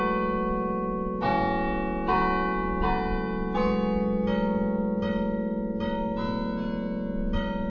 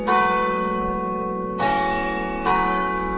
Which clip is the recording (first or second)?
first